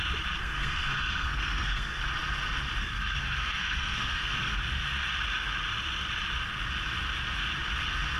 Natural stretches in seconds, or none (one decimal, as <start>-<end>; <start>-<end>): 0.0-0.4; 2.0-2.8; 4.6-8.2